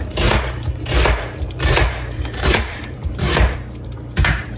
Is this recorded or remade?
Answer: remade